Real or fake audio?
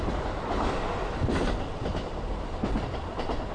real